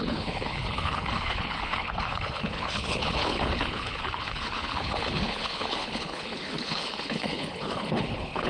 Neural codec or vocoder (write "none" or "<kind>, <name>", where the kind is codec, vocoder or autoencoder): codec, HILCodec